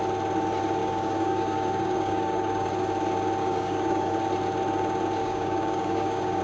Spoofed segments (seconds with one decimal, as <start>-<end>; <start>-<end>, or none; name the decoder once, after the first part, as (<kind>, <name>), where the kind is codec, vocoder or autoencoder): 0.8-2.7 (codec, DAC); 3.4-4.1; 5.2-6.4